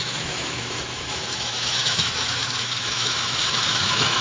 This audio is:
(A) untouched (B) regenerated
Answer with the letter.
B